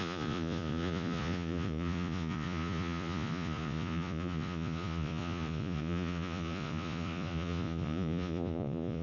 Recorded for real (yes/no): no